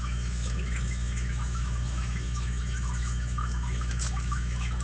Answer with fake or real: fake